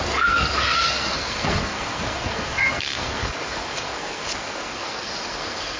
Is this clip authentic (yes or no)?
no